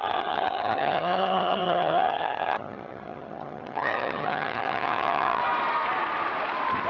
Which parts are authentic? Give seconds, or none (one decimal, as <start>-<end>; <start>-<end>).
5.4-6.9